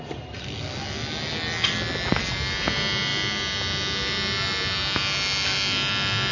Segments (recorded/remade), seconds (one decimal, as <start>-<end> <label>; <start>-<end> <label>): 0.0-6.3 recorded